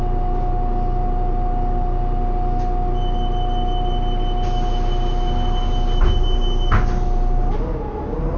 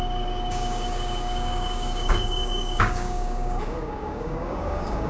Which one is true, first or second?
first